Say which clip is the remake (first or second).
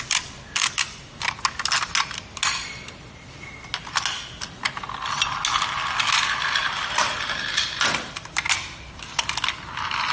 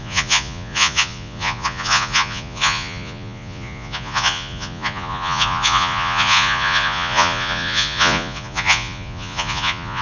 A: second